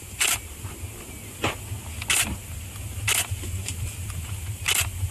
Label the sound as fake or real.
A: real